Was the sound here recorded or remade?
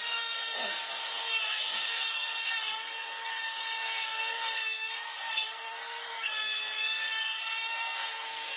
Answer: remade